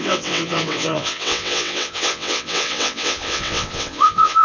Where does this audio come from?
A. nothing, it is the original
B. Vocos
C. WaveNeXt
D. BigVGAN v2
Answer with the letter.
C